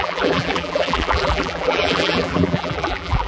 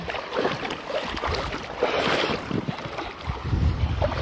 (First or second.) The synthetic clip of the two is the first